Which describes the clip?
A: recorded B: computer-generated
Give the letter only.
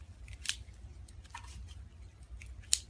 A